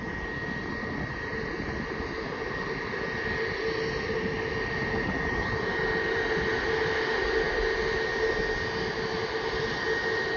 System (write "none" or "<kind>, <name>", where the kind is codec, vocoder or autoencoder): none